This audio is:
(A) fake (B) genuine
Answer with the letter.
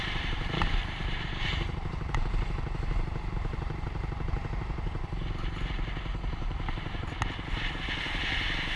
A